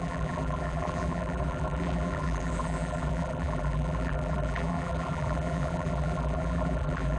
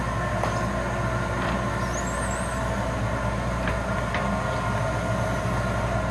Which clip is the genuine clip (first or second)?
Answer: second